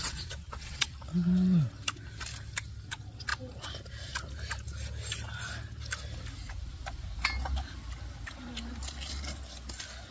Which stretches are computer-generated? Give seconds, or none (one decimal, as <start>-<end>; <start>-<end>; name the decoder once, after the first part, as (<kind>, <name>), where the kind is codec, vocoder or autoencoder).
0.0-0.9 (vocoder, WaveNeXt)